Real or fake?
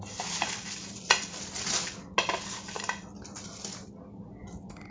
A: real